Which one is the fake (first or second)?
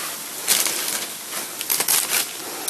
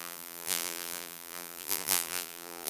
second